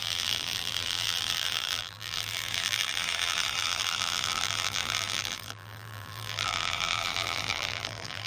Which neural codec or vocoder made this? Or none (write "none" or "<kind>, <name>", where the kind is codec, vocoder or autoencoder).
vocoder, BigVGAN v2